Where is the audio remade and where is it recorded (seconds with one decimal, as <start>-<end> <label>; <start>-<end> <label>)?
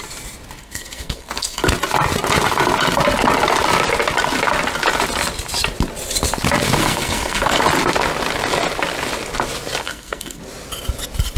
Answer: 0.0-0.6 recorded; 0.6-1.6 remade; 1.6-6.8 recorded; 6.8-7.6 remade; 7.6-9.8 recorded; 9.8-10.4 remade; 10.4-11.4 recorded